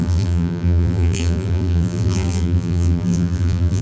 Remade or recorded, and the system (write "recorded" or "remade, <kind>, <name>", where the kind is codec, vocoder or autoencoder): remade, vocoder, BigVGAN v2